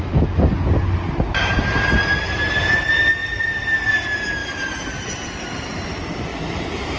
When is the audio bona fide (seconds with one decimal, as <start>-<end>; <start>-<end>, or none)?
0.0-6.3